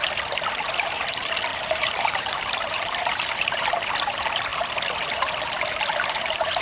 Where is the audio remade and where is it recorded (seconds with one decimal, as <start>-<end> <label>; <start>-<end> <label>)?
0.0-1.5 recorded; 1.5-3.7 remade; 3.7-6.6 recorded